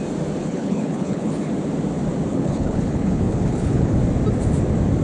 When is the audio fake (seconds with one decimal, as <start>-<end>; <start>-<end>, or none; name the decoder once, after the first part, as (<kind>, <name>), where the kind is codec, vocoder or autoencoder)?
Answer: 0.4-1.5 (codec, HILCodec); 2.3-4.0